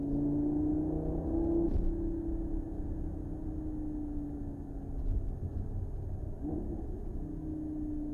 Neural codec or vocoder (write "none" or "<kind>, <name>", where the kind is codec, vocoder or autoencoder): none